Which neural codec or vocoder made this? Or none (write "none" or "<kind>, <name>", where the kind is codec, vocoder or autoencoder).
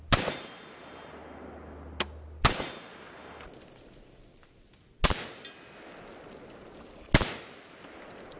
none